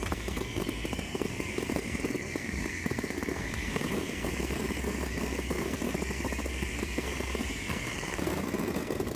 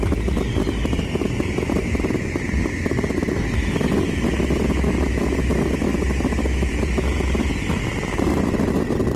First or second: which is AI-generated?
first